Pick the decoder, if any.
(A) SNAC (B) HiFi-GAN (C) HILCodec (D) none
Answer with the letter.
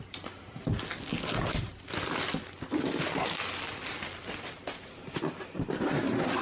D